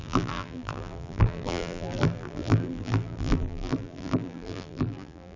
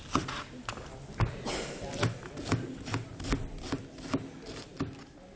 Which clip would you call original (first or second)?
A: second